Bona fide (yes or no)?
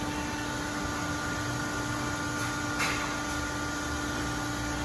yes